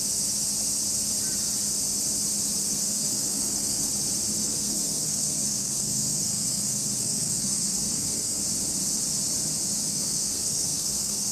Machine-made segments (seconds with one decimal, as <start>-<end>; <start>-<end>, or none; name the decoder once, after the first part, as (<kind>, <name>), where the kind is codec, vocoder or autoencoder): 2.7-3.9 (codec, SNAC); 4.4-8.4; 9.9-11.3